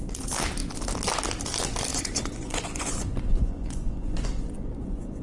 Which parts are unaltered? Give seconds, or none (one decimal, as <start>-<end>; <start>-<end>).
0.0-1.9